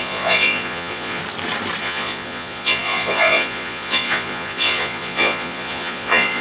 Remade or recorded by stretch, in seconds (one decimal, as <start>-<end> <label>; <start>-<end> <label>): 0.0-1.2 remade; 1.2-1.8 recorded; 1.8-6.4 remade